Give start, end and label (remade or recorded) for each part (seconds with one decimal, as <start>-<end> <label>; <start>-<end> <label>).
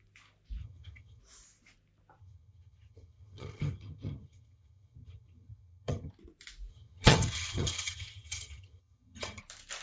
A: 0.0-0.6 recorded; 0.6-1.2 remade; 1.2-2.2 recorded; 2.2-6.1 remade; 6.1-6.7 recorded; 6.7-9.4 remade; 9.4-9.8 recorded